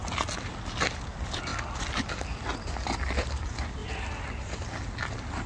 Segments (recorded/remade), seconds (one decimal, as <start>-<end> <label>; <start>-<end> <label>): 0.0-5.5 recorded